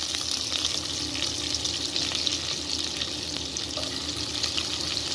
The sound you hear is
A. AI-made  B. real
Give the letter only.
B